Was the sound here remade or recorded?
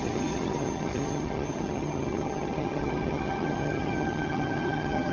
remade